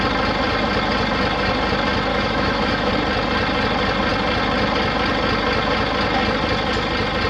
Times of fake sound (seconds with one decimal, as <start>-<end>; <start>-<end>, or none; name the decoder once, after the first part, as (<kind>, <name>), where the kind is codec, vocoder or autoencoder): 2.1-2.9 (autoencoder, DAC-VAE)